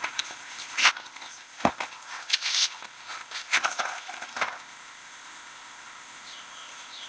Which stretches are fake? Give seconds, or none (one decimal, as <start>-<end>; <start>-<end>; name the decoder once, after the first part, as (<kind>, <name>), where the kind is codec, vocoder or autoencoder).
0.0-7.1 (codec, ZipCodec)